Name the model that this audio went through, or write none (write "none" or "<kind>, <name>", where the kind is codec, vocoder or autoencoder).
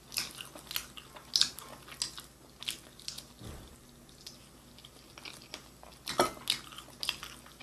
none